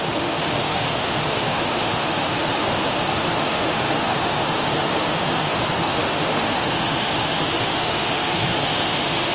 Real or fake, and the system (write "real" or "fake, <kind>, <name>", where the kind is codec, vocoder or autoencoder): fake, autoencoder, DAC-VAE